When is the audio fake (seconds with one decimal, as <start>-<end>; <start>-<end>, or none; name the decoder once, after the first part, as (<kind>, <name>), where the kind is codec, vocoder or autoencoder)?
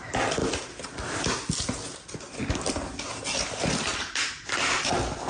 none